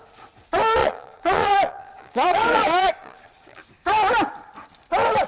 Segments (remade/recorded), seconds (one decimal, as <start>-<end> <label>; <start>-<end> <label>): 0.0-0.8 recorded; 0.8-3.6 remade; 3.6-5.3 recorded